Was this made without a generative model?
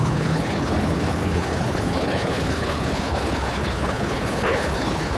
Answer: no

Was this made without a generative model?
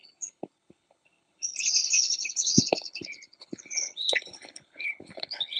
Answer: no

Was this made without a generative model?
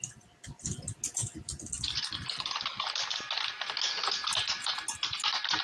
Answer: yes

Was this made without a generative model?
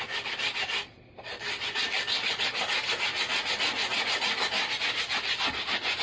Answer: yes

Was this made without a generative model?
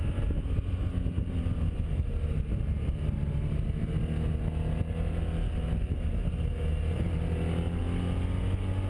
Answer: yes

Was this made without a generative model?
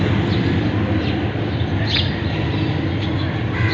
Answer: yes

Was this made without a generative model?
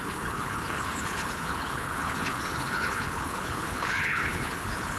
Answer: no